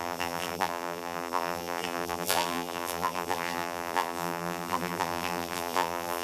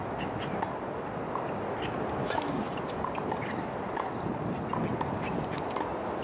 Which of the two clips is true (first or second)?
second